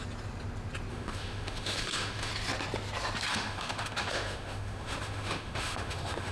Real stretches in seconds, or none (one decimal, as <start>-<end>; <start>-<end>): 0.0-0.9; 2.3-3.3

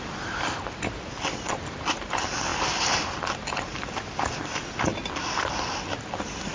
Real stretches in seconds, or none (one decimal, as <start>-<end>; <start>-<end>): 0.0-6.5